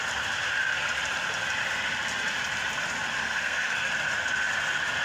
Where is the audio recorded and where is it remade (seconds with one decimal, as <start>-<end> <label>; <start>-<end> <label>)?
0.0-3.2 recorded; 3.2-3.9 remade; 3.9-5.0 recorded

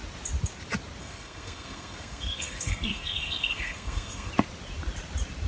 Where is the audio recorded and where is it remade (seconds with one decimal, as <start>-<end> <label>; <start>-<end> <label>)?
0.0-1.0 recorded; 1.0-4.3 remade; 4.3-5.5 recorded

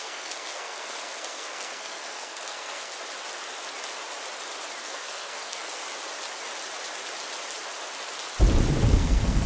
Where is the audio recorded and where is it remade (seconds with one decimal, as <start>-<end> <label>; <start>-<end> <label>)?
0.0-2.9 remade; 2.9-4.8 recorded; 4.8-5.8 remade; 5.8-8.9 recorded; 8.9-9.5 remade

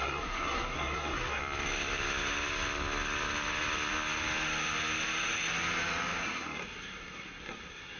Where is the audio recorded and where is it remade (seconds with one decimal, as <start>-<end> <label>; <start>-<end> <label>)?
0.0-1.4 remade; 1.4-6.2 recorded; 6.2-8.0 remade